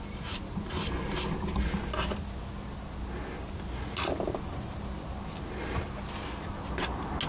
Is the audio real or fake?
real